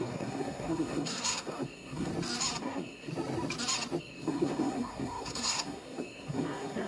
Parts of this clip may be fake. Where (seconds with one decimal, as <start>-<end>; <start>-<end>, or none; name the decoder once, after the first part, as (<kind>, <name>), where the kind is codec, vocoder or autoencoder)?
0.0-2.1 (codec, SNAC); 2.6-3.1; 4.0-6.9